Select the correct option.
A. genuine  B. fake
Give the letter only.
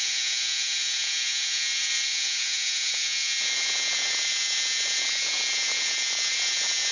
B